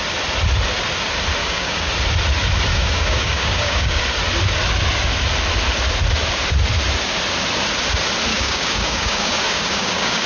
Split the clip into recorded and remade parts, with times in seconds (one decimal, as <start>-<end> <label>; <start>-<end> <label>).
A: 0.0-1.4 recorded; 1.4-1.9 remade; 1.9-2.7 recorded; 2.7-4.0 remade; 4.0-8.3 recorded; 8.3-10.3 remade